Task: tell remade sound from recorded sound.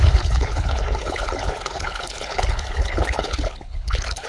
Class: remade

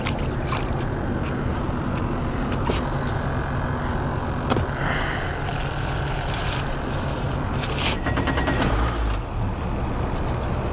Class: recorded